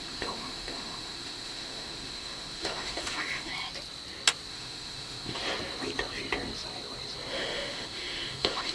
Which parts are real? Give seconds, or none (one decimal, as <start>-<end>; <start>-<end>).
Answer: 3.5-4.5; 5.4-7.3